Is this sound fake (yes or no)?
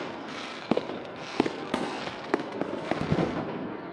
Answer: yes